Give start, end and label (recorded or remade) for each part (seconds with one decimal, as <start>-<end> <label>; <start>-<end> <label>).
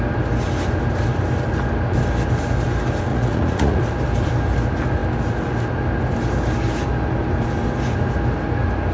0.0-3.1 recorded; 3.1-3.8 remade; 3.8-8.9 recorded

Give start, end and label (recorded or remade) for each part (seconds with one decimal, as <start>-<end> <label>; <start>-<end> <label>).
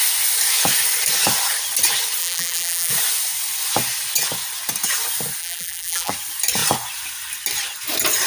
0.0-2.2 recorded; 2.2-2.9 remade; 2.9-5.4 recorded; 5.4-6.1 remade; 6.1-8.3 recorded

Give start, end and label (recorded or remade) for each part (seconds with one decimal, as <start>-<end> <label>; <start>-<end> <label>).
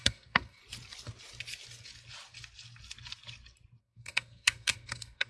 0.0-0.6 remade; 0.6-3.8 recorded; 3.8-5.3 remade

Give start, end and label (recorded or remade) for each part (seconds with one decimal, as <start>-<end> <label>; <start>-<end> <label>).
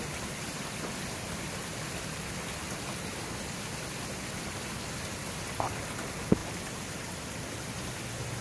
0.0-8.4 recorded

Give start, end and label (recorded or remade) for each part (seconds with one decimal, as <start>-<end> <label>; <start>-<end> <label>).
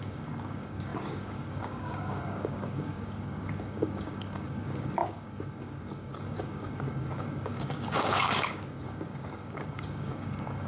0.0-10.7 remade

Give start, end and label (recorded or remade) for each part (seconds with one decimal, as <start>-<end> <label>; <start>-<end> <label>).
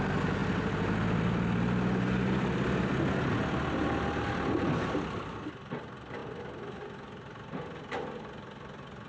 0.0-6.2 recorded; 6.2-9.1 remade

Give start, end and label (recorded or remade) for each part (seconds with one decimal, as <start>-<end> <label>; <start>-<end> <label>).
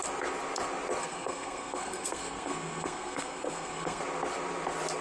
0.0-1.0 recorded; 1.0-4.0 remade; 4.0-5.0 recorded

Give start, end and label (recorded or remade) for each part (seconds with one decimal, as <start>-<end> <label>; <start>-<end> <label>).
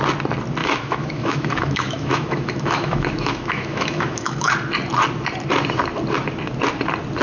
0.0-0.6 recorded; 0.6-4.5 remade; 4.5-7.2 recorded